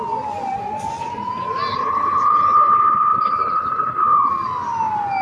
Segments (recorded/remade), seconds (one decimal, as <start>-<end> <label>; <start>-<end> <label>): 0.0-1.7 recorded; 1.7-4.3 remade; 4.3-5.2 recorded